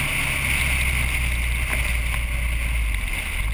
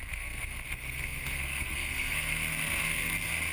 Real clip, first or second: first